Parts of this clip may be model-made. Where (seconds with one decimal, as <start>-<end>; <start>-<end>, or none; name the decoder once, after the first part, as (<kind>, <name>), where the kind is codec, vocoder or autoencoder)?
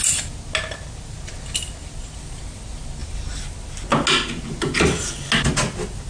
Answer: none